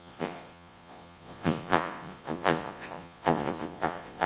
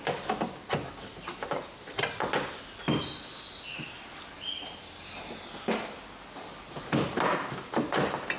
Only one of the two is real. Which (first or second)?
second